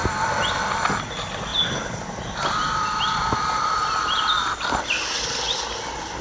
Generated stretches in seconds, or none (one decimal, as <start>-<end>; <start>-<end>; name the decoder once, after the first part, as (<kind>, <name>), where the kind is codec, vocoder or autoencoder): 0.0-0.6 (vocoder, BigVGAN v2); 1.5-4.8